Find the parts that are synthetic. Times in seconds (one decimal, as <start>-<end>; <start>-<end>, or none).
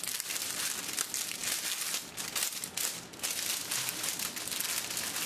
none